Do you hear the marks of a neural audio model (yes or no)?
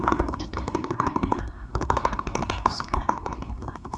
yes